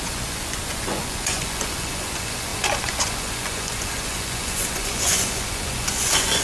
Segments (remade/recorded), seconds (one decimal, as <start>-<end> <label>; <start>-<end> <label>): 0.0-6.4 remade